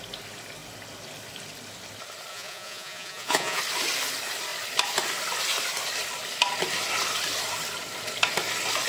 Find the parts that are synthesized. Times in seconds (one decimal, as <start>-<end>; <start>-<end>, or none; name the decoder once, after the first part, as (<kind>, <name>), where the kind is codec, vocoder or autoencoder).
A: 2.3-3.6 (vocoder, Vocos)